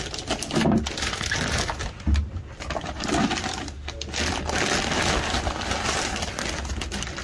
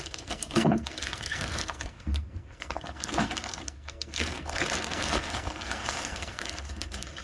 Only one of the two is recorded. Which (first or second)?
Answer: first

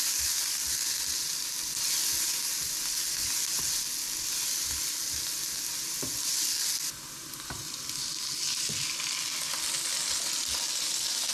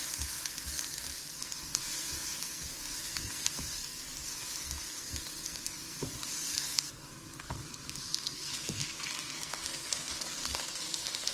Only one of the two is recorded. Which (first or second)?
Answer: first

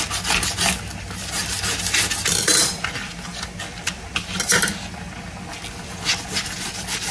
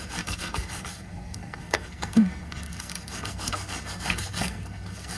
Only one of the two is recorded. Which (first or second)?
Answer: first